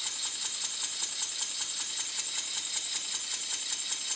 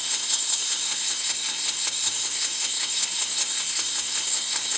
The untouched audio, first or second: first